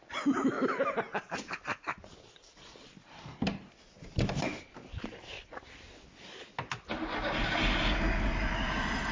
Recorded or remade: recorded